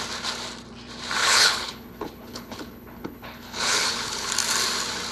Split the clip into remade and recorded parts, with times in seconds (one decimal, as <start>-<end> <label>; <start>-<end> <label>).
0.0-1.2 recorded; 1.2-4.3 remade; 4.3-5.1 recorded